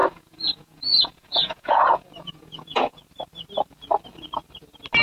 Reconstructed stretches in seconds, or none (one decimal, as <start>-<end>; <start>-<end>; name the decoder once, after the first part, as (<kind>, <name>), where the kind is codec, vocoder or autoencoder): 0.0-3.0 (vocoder, Vocos)